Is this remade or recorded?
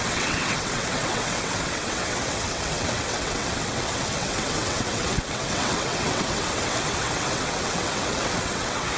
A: remade